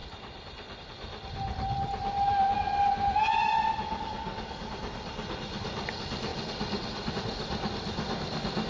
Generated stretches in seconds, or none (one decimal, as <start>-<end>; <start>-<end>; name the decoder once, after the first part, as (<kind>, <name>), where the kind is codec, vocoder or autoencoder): 3.8-4.7 (codec, DAC)